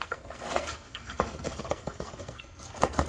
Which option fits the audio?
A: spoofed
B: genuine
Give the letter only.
A